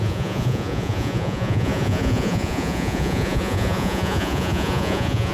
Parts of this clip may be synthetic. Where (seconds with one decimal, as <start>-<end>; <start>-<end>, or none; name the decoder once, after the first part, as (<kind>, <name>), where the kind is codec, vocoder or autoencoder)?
0.0-5.3 (vocoder, Vocos)